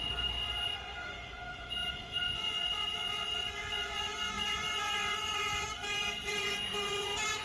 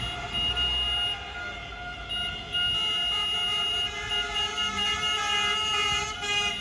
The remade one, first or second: first